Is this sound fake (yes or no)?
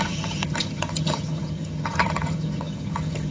yes